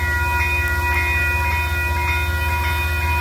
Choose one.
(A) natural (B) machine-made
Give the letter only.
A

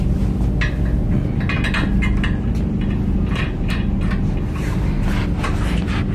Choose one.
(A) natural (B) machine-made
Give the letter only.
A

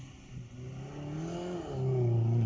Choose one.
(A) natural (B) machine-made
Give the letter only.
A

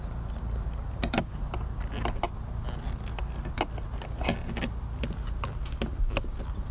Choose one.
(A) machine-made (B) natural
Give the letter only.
B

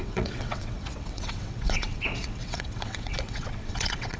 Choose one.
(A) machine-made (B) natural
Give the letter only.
A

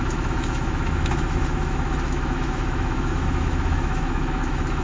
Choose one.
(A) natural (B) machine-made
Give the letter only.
B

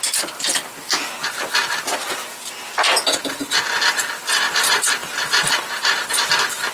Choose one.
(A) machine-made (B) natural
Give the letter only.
B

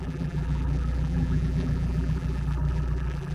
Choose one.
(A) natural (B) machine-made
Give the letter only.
B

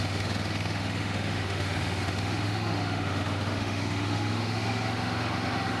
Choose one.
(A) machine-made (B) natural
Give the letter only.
A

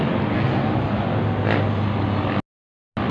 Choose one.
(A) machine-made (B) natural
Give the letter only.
B